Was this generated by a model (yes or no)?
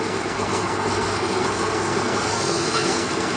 yes